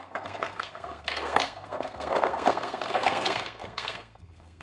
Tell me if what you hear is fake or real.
fake